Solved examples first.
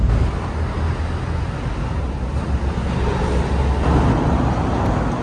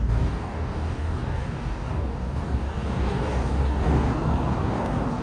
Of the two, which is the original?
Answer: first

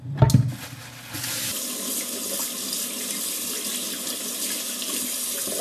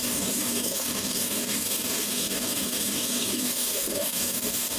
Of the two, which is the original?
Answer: first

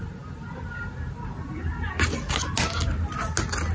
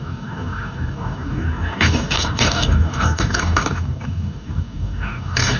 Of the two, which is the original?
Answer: first